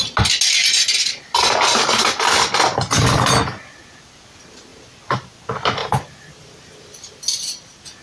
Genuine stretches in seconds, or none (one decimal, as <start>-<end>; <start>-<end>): 0.0-5.8; 7.1-8.0